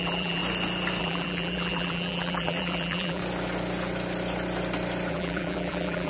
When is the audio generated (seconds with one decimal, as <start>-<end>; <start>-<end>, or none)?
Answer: 0.0-0.4; 1.0-3.2; 5.1-6.1